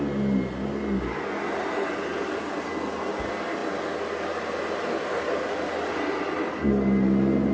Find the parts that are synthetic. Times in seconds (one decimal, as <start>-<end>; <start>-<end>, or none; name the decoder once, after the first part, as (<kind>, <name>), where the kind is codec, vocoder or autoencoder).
none